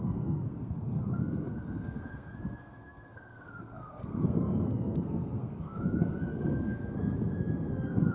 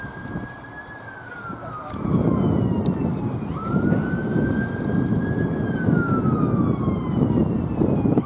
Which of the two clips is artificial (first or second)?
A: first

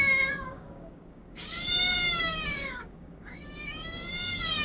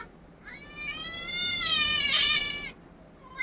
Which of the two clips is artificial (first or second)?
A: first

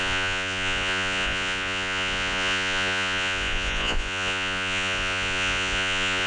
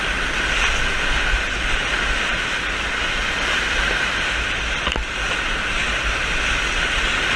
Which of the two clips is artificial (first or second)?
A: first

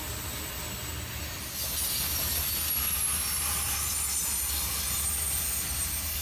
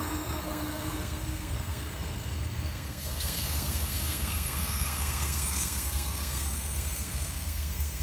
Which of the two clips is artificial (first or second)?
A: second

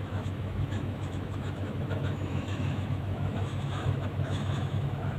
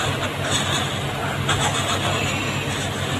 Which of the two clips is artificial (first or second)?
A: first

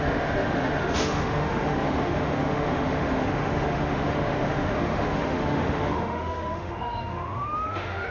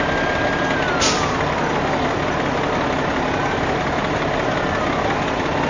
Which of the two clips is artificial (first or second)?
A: first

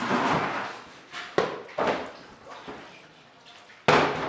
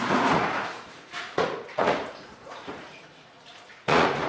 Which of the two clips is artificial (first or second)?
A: second